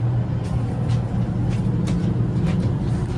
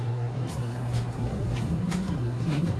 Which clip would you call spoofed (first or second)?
second